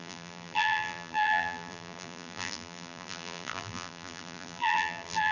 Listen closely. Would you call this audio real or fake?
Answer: fake